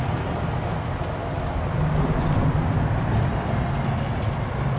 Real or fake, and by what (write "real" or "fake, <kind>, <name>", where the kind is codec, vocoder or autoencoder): fake, vocoder, BigVGAN v2